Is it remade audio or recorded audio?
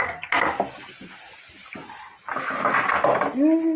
recorded